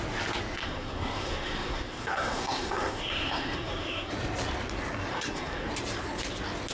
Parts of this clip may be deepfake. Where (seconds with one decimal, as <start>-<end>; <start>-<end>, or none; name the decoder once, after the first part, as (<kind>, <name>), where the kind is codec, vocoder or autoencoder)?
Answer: 0.6-4.1 (codec, SNAC); 5.1-5.7